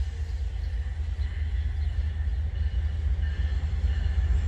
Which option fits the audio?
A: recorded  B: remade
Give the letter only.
A